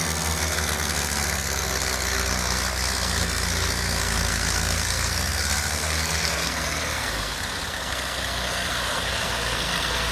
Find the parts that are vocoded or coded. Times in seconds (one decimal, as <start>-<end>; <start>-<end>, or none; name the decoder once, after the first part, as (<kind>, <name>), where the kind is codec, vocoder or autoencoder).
0.0-10.1 (codec, SNAC)